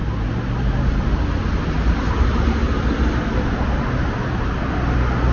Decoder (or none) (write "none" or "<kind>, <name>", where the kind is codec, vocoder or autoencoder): none